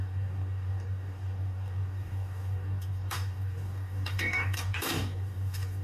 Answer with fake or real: fake